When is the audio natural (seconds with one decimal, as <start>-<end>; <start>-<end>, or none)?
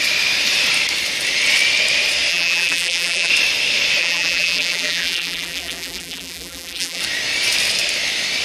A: 0.0-2.3; 3.3-4.0; 7.0-8.4